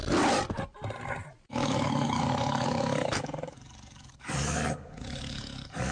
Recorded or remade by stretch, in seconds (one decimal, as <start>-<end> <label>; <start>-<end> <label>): 0.0-1.5 recorded; 1.5-5.9 remade